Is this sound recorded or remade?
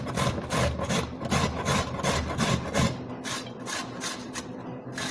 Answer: recorded